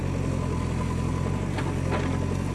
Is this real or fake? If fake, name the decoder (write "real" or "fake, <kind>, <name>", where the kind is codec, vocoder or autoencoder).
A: real